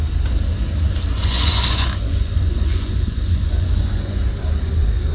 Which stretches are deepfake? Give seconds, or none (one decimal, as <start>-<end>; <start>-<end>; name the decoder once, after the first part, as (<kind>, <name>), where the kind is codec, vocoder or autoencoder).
1.1-4.2 (vocoder, Vocos)